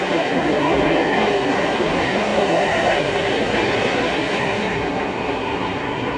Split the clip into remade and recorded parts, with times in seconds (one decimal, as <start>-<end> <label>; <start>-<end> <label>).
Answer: 0.0-6.2 remade